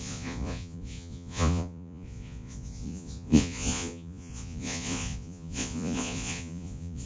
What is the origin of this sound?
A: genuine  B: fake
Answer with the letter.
B